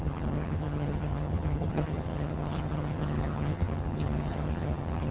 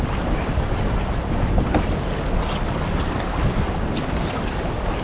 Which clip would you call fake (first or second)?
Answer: first